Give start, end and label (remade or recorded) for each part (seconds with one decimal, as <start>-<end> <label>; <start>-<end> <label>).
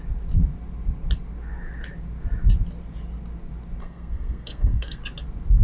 0.0-3.8 recorded; 3.8-5.0 remade; 5.0-5.6 recorded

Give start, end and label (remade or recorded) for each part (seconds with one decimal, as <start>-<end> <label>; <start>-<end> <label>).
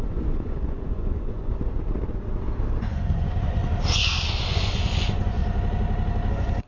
0.0-1.5 remade; 1.5-2.8 recorded; 2.8-3.6 remade; 3.6-4.4 recorded; 4.4-5.4 remade; 5.4-6.3 recorded; 6.3-6.7 remade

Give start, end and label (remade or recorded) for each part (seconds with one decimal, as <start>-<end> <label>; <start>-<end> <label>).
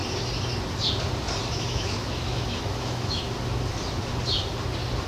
0.0-1.4 recorded; 1.4-3.2 remade; 3.2-5.1 recorded